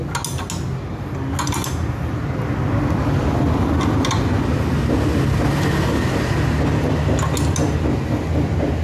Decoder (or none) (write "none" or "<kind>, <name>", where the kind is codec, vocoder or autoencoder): none